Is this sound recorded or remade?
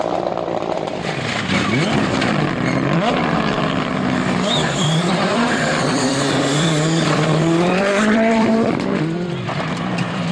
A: remade